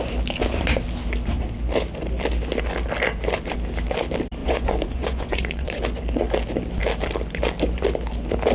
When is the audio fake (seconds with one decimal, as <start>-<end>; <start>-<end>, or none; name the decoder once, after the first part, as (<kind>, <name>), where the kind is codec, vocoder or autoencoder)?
4.4-5.8 (vocoder, Vocos)